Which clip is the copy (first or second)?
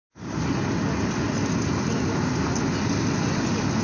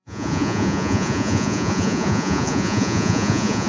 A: second